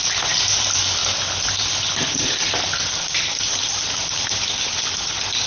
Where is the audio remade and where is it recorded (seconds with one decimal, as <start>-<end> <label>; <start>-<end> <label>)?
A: 0.0-5.5 recorded